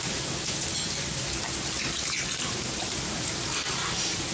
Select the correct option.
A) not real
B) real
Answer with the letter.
B